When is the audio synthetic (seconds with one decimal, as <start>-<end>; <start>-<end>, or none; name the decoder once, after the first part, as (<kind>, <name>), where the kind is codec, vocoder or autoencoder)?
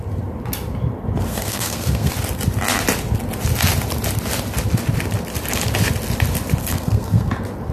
1.3-2.1 (codec, SNAC); 6.6-7.3